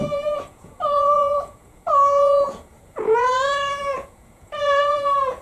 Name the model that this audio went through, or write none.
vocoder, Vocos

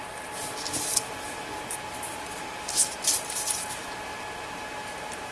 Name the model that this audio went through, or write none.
none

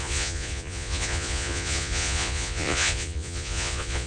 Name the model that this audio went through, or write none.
vocoder, Vocos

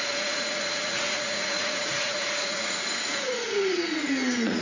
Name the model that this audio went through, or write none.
vocoder, Vocos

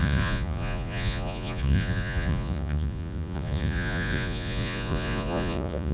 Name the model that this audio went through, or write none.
vocoder, Vocos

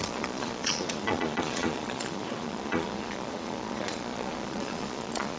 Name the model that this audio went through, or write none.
vocoder, Vocos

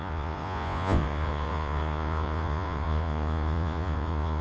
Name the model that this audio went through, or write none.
vocoder, Vocos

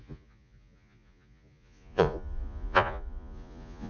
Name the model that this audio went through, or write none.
vocoder, Vocos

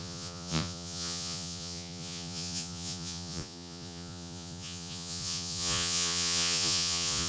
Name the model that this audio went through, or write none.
vocoder, Vocos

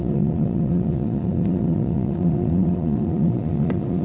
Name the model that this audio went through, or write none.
vocoder, Vocos